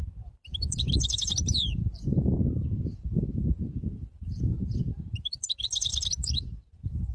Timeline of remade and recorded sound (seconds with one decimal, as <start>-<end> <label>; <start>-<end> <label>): 0.0-7.1 remade